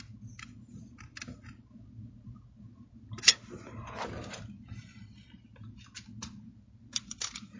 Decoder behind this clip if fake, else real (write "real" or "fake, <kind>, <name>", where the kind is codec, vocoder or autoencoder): real